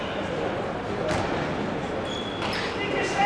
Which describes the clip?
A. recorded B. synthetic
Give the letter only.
A